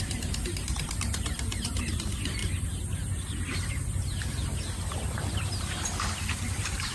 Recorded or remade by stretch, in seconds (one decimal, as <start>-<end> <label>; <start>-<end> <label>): 0.0-2.4 remade; 2.4-4.9 recorded; 4.9-6.9 remade